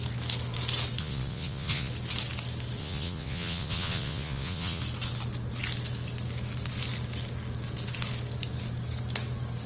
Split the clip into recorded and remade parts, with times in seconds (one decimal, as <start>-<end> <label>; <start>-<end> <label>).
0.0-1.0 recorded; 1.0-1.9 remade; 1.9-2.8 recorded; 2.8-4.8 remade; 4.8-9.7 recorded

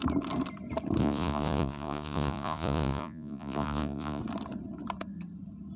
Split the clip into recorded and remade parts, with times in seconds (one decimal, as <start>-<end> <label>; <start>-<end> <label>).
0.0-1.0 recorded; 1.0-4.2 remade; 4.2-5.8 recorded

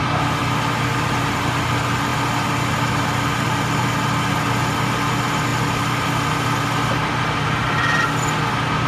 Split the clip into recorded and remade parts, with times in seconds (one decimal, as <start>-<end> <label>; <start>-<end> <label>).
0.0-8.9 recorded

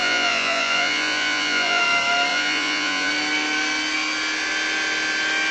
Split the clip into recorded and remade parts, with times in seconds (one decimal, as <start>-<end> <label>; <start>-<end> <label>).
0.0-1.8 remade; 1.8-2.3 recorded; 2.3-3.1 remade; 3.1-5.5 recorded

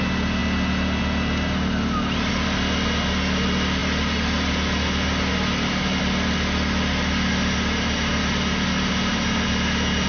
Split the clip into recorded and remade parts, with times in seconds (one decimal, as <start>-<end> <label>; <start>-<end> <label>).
0.0-10.1 recorded

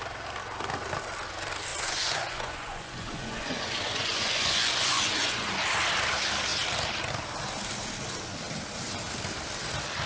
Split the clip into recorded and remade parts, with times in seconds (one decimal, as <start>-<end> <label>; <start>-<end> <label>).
0.0-1.7 recorded; 1.7-5.5 remade; 5.5-10.1 recorded